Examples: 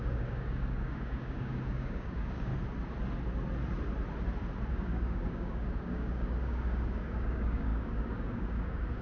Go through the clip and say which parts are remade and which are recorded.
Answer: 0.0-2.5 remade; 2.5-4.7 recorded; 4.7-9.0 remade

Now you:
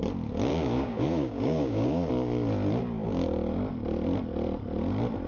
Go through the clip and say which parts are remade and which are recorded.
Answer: 0.0-0.5 recorded; 0.5-2.1 remade; 2.1-5.3 recorded

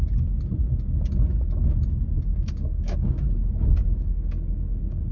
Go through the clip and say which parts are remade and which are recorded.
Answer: 0.0-2.3 recorded; 2.3-5.1 remade

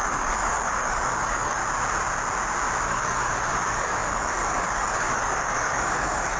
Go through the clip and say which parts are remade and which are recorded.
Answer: 0.0-1.6 remade; 1.6-2.8 recorded; 2.8-6.4 remade

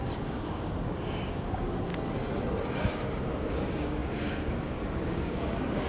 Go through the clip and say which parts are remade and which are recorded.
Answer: 0.0-1.9 remade; 1.9-3.5 recorded; 3.5-5.9 remade

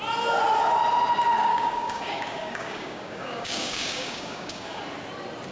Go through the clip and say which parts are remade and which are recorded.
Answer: 0.0-1.5 recorded; 1.5-4.8 remade; 4.8-5.5 recorded